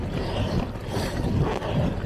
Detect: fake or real real